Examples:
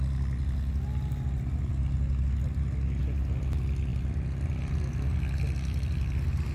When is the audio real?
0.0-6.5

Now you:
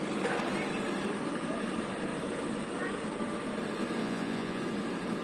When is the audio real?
0.0-4.0; 4.6-5.2

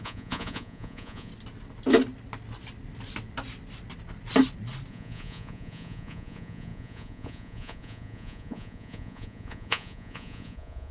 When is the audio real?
1.3-4.9